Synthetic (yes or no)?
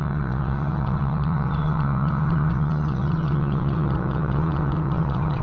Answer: yes